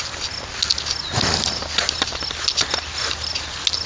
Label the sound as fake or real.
real